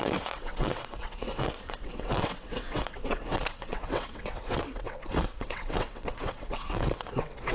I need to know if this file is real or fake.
fake